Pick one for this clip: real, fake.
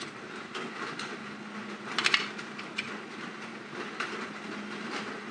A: real